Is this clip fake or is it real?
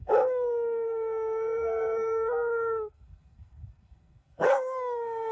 fake